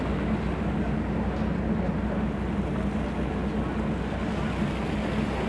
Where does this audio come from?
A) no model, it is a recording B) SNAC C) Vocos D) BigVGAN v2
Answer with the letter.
A